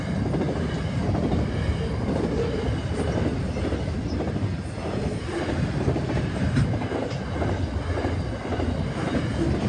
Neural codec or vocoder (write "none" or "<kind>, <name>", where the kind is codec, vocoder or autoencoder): none